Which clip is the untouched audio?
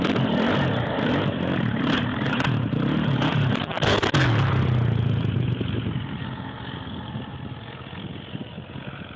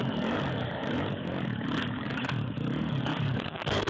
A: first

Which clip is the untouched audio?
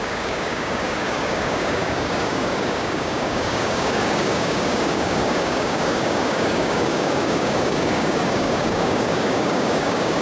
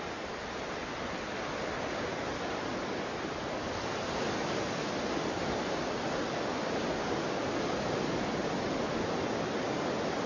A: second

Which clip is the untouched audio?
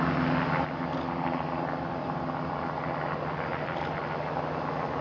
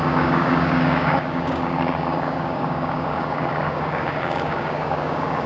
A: first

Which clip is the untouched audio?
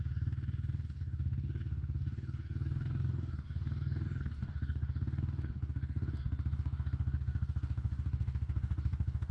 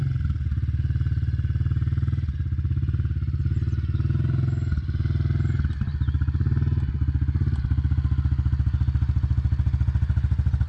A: second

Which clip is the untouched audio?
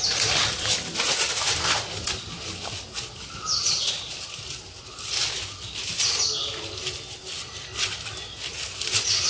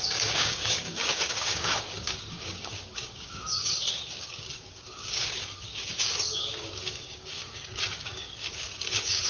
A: first